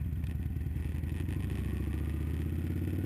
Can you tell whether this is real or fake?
real